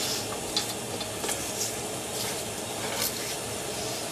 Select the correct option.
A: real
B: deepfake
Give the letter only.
A